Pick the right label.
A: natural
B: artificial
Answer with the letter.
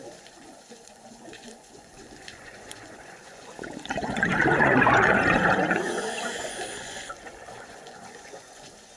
B